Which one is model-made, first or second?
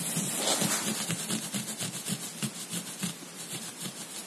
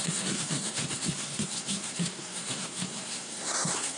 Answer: second